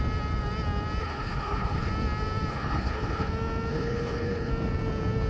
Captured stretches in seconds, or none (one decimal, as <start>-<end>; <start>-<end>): 0.0-1.0; 1.9-2.5; 3.3-3.7; 4.5-5.3